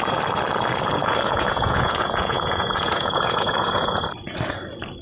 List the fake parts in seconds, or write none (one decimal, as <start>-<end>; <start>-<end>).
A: 1.0-4.0